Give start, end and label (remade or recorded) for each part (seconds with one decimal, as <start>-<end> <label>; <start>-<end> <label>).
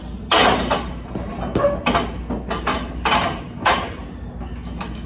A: 0.0-5.1 recorded